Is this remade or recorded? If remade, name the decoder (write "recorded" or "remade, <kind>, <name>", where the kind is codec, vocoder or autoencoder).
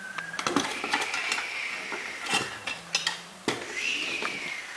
recorded